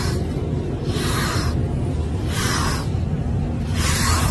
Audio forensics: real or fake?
real